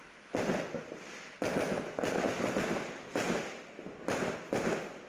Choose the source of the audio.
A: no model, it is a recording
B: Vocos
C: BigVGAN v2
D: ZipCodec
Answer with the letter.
A